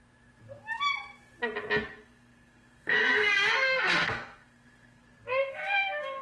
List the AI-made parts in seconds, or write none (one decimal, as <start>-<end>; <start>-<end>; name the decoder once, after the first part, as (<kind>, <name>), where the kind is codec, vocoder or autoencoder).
2.0-5.0 (codec, SNAC); 5.4-6.2